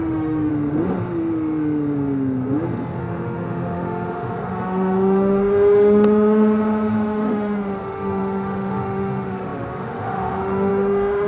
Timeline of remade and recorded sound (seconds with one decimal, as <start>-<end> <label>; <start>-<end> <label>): 0.0-0.5 remade; 0.5-3.0 recorded; 3.0-11.3 remade